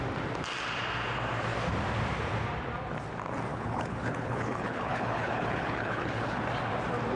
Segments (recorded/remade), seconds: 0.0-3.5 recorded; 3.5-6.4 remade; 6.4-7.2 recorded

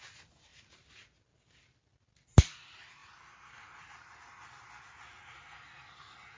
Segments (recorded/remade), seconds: 0.0-6.4 recorded

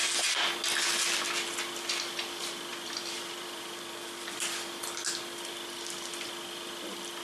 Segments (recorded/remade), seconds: 0.0-2.7 recorded; 2.7-4.7 remade; 4.7-7.2 recorded

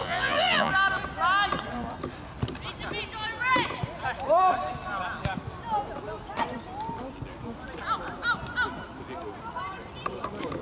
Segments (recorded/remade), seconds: 0.0-0.7 remade; 0.7-10.6 recorded

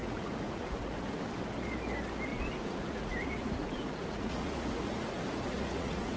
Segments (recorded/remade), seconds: 0.0-1.2 remade; 1.2-2.3 recorded; 2.3-6.2 remade

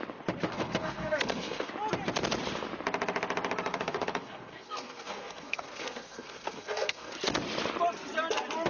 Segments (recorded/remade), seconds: 0.0-0.5 recorded; 0.5-1.7 remade; 1.7-3.7 recorded; 3.7-7.1 remade; 7.1-8.7 recorded

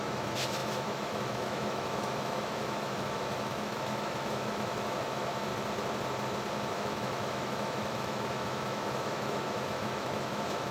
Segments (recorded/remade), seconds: 0.0-5.5 remade; 5.5-6.7 recorded; 6.7-10.7 remade

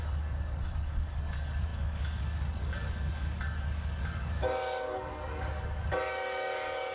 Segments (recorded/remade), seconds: 0.0-6.9 remade